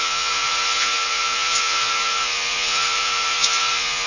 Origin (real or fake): fake